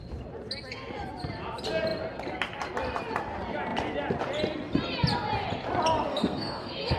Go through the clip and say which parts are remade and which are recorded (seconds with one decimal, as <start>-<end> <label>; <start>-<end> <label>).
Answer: 0.0-6.1 recorded; 6.1-7.0 remade